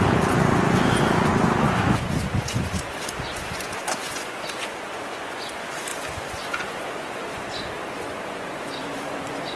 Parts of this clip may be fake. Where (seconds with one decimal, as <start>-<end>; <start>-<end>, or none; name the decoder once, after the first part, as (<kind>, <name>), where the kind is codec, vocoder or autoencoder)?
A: 0.0-9.6 (vocoder, Vocos)